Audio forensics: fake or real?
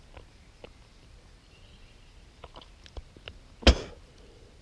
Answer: real